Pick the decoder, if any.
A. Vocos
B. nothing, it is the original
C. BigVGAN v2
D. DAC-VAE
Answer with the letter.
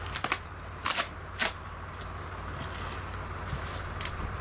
B